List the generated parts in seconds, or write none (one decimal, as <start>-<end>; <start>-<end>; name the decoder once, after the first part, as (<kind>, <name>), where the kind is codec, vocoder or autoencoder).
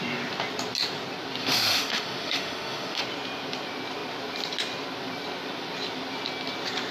1.4-3.0 (autoencoder, DAC-VAE)